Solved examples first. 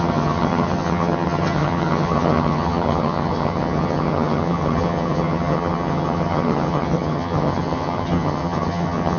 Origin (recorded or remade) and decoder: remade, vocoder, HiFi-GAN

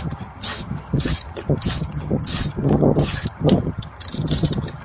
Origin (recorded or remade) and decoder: remade, vocoder, HiFi-GAN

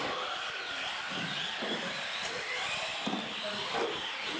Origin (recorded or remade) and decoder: recorded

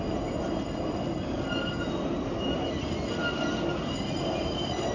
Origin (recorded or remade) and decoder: recorded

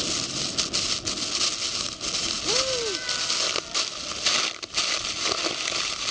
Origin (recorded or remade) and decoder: recorded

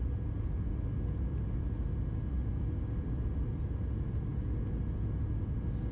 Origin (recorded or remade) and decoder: recorded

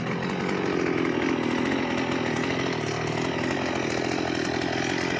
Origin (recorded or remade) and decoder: recorded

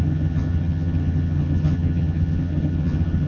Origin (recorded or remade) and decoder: remade, vocoder, HiFi-GAN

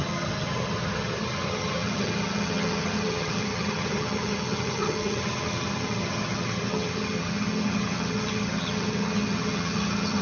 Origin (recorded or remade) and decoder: remade, vocoder, HiFi-GAN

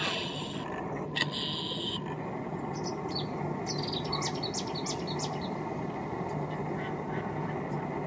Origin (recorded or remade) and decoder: recorded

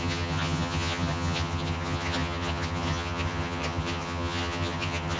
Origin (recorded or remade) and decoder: remade, vocoder, HiFi-GAN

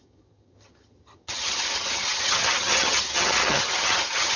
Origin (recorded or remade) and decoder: remade, vocoder, HiFi-GAN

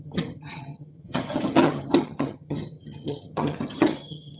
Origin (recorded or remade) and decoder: remade, vocoder, HiFi-GAN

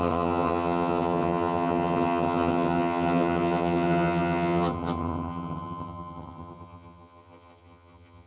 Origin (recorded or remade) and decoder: remade, vocoder, HiFi-GAN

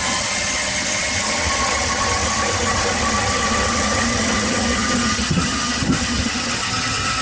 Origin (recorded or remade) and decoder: remade, vocoder, HiFi-GAN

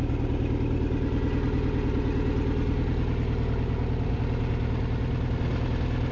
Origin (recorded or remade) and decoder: recorded